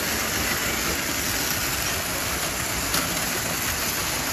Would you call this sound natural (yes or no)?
yes